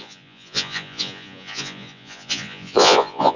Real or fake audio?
fake